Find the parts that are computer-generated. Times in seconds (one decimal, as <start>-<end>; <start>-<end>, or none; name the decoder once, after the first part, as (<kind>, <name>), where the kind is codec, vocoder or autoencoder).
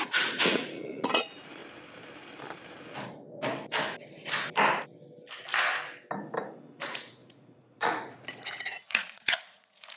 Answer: 0.0-1.6 (vocoder, Vocos); 6.8-10.0